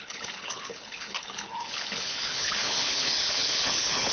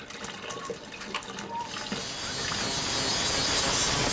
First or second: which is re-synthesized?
first